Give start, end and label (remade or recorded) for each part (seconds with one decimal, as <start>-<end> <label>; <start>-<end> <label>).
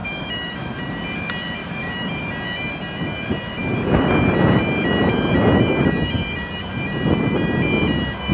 0.0-0.7 remade; 0.7-1.6 recorded; 1.6-2.1 remade; 2.1-8.3 recorded